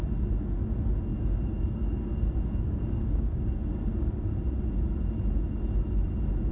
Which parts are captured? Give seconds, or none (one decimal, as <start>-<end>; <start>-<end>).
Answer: 0.0-1.1; 4.3-6.5